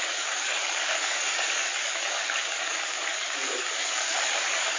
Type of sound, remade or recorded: remade